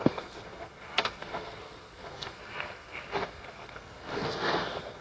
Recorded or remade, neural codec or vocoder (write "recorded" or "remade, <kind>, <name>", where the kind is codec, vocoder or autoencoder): remade, codec, SNAC